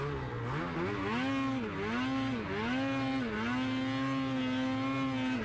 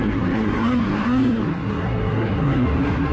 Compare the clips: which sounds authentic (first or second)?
first